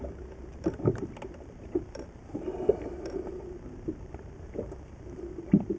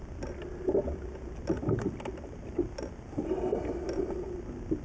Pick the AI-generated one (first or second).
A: first